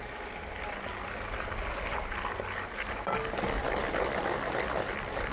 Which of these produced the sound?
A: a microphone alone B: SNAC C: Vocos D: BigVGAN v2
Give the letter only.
A